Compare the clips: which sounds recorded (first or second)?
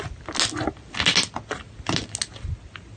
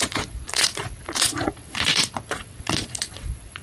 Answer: first